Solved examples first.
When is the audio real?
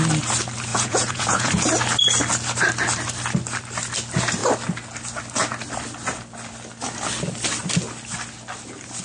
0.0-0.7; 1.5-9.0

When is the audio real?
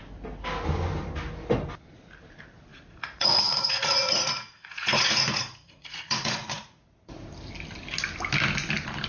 0.0-2.7; 7.3-9.1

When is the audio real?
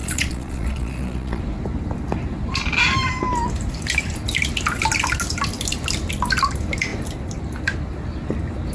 1.4-8.7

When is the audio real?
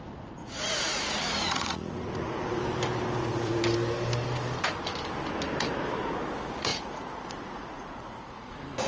0.0-0.4; 1.0-1.4; 2.6-6.7; 8.5-8.9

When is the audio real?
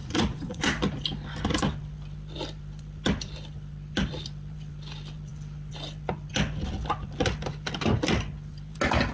0.6-9.1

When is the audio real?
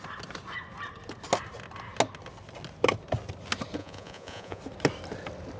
0.0-3.8; 4.6-5.6